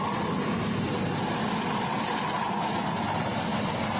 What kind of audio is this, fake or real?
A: real